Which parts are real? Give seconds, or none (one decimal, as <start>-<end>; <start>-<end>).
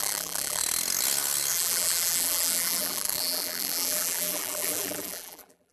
0.6-1.5